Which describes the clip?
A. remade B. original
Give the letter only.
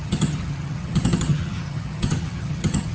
A